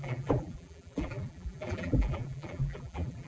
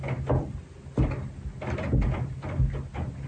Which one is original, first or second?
second